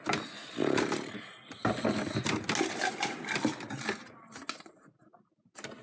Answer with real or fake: real